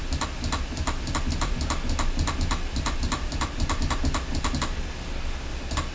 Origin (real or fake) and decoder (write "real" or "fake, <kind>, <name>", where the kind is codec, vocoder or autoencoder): real